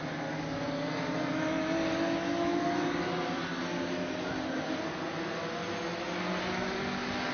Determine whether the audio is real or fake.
real